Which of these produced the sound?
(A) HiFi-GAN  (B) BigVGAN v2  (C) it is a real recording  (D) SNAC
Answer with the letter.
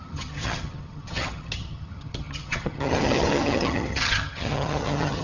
A